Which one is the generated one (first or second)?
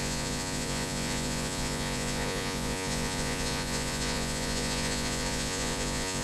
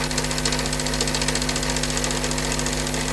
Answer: first